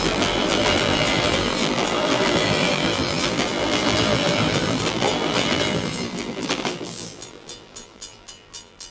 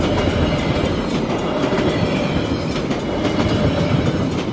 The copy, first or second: first